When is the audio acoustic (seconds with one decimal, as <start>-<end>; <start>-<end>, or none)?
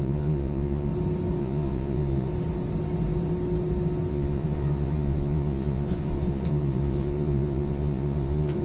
0.9-1.4; 2.3-4.1